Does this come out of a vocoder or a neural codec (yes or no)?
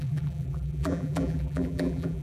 yes